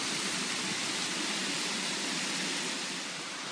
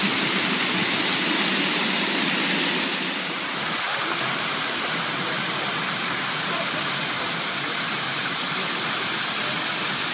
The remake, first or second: first